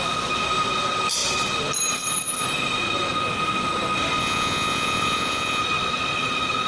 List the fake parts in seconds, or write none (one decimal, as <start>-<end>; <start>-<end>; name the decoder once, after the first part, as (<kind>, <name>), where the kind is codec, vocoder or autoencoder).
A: 4.2-5.6 (vocoder, Vocos)